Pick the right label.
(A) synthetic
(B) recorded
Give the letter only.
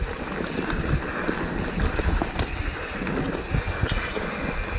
B